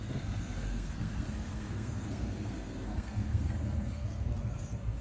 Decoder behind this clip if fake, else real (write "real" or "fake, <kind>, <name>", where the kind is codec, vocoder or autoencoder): fake, codec, SNAC